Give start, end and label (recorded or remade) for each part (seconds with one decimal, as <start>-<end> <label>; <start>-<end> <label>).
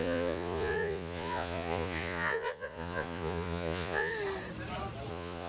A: 0.0-4.1 remade; 4.1-5.1 recorded; 5.1-5.5 remade